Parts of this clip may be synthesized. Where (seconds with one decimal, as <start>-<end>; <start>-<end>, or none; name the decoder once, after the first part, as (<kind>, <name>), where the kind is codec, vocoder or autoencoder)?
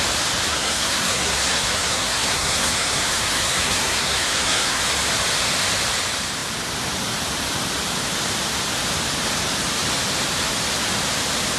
0.5-4.8 (codec, SNAC)